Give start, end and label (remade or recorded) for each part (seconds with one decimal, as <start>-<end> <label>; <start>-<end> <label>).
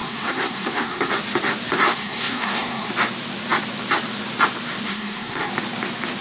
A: 0.0-1.1 remade; 1.1-1.9 recorded; 1.9-2.9 remade; 2.9-4.9 recorded; 4.9-5.5 remade; 5.5-6.2 recorded